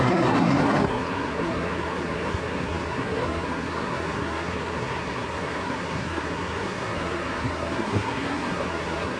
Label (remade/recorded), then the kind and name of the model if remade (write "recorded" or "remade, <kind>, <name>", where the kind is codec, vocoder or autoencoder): remade, codec, SNAC